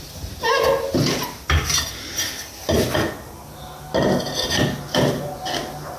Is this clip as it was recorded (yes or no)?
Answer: yes